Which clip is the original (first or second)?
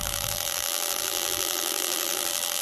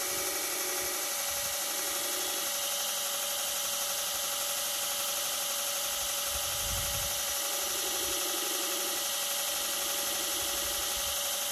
second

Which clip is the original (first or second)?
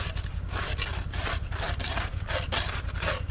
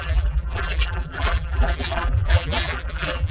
first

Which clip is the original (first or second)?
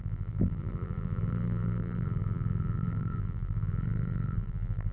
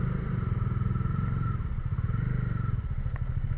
second